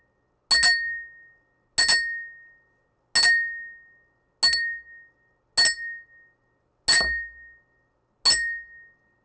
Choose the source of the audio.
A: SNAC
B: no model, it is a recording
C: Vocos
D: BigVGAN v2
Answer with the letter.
B